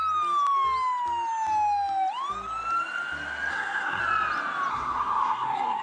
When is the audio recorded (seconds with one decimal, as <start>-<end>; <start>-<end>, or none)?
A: 0.0-3.5; 4.0-4.7